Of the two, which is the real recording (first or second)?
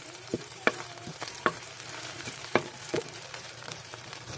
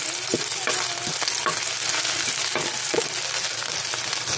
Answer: second